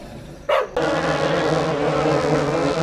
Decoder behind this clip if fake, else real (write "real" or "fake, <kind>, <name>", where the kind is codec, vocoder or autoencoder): real